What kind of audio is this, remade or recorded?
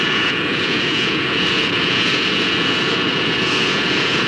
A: remade